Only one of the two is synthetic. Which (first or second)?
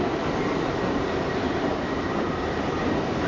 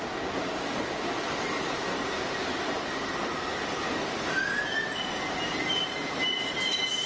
first